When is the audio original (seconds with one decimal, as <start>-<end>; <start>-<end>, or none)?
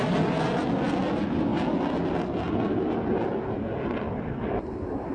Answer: 0.0-5.1